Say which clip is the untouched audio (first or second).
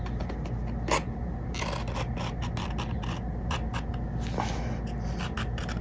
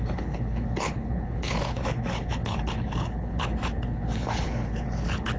first